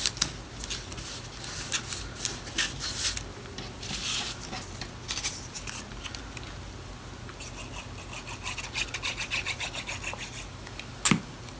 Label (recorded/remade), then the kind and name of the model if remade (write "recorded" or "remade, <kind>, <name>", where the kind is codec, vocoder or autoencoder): recorded